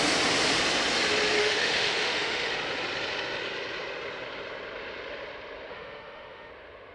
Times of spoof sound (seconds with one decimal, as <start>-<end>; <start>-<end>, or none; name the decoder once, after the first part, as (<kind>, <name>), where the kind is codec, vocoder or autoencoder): 1.4-2.5 (autoencoder, DAC-VAE); 5.7-6.5